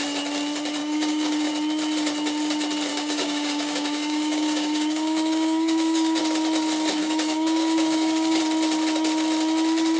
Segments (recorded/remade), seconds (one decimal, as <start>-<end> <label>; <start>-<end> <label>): 0.0-0.8 recorded; 0.8-1.5 remade; 1.5-2.9 recorded; 2.9-6.2 remade; 6.2-7.0 recorded; 7.0-8.4 remade; 8.4-10.0 recorded